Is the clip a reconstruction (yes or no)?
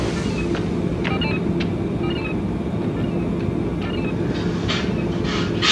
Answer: no